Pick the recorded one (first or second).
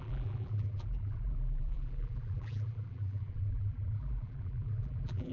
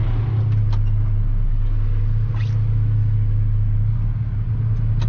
second